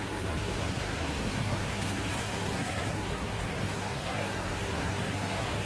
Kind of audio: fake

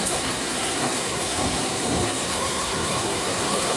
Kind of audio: fake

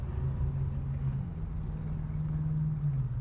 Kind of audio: real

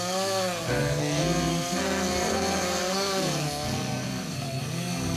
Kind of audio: fake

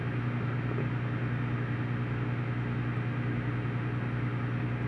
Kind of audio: real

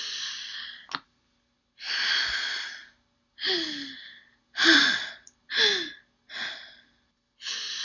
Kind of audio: real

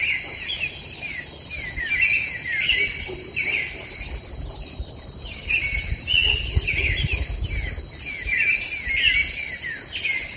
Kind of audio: real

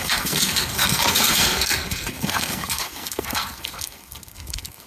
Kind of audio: fake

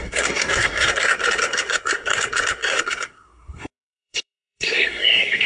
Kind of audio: fake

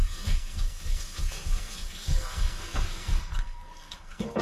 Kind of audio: fake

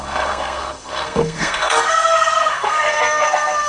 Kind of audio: fake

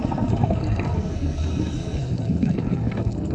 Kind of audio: fake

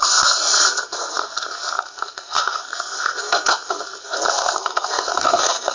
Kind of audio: fake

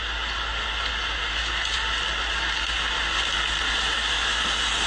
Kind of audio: real